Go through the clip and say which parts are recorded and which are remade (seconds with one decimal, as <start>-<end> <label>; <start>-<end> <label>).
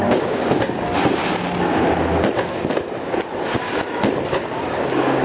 0.0-1.2 remade; 1.2-4.3 recorded; 4.3-5.2 remade